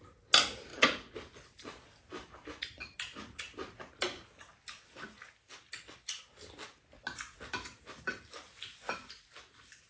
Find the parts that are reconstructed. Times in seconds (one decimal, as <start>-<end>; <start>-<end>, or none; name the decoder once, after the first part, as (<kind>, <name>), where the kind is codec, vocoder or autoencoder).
none